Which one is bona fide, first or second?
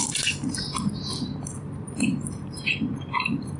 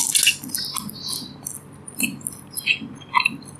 second